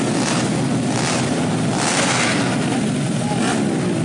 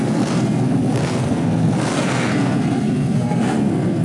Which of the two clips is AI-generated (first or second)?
second